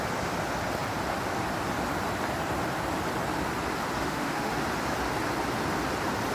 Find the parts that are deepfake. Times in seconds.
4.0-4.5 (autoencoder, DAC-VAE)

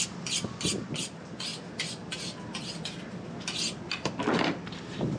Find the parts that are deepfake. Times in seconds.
none

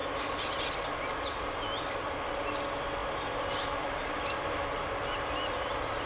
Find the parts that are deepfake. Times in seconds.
none

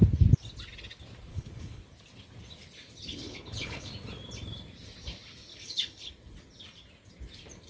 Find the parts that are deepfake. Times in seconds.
1.3-1.8 (codec, HILCodec); 3.1-3.9; 5.5-6.1

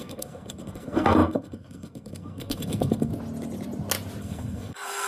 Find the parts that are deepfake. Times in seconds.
0.0-3.1 (codec, SNAC); 4.2-5.1

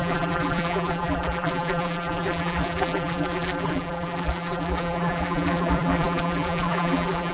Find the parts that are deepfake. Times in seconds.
0.0-7.3 (vocoder, BigVGAN v2)

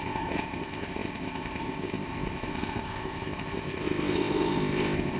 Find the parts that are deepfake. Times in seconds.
0.0-5.2 (codec, ZipCodec)

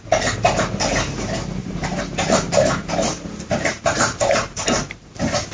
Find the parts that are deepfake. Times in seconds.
1.6-4.9 (vocoder, BigVGAN v2)